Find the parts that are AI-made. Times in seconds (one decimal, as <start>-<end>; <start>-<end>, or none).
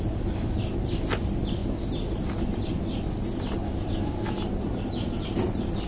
none